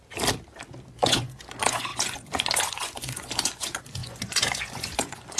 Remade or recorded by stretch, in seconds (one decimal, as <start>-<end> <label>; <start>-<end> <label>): 0.0-0.9 recorded; 0.9-5.4 remade